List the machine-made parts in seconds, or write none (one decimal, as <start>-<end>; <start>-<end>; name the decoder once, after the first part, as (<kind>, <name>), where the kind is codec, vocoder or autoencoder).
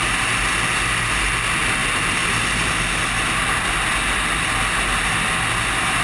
none